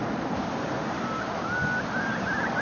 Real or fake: real